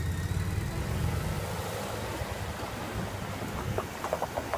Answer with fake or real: real